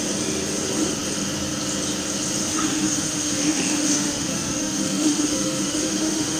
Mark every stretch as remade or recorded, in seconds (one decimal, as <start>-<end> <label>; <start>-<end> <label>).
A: 0.0-2.4 recorded; 2.4-6.4 remade